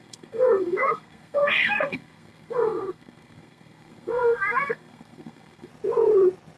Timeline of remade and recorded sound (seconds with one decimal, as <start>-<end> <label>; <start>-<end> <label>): 0.0-5.7 remade; 5.7-6.6 recorded